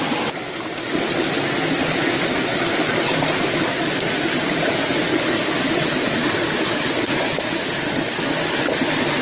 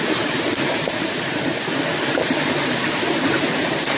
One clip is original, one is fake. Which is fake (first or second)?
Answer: second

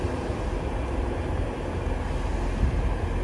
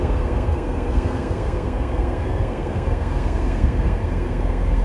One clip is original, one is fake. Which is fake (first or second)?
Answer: second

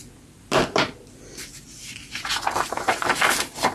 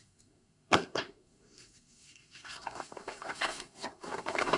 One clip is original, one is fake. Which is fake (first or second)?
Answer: second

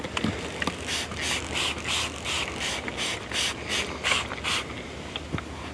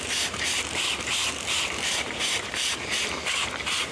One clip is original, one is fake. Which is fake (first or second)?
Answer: second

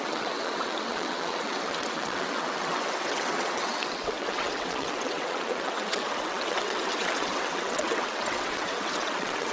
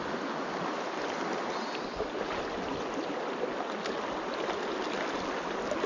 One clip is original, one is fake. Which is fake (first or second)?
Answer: first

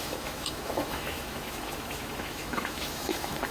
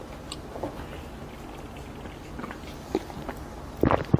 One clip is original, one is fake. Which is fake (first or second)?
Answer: first